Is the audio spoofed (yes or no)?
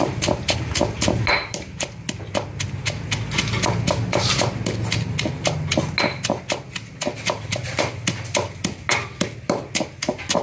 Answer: no